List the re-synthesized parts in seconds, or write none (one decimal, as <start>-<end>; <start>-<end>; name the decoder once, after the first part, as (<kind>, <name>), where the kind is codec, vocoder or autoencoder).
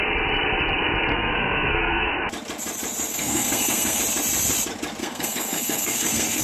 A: 1.1-2.1 (codec, SNAC); 3.1-4.0; 5.0-6.4